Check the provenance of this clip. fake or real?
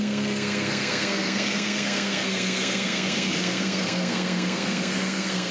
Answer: fake